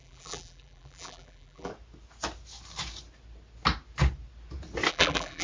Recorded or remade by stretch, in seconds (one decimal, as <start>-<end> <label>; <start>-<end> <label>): 0.0-1.7 remade; 1.7-4.9 recorded; 4.9-5.4 remade